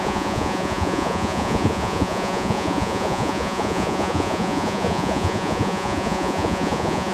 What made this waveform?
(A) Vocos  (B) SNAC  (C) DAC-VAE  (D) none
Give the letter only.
A